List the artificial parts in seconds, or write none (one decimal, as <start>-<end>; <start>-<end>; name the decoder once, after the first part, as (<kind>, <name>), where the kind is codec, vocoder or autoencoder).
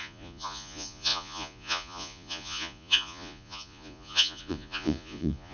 0.0-5.5 (vocoder, Vocos)